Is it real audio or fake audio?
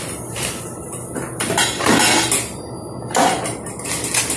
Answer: real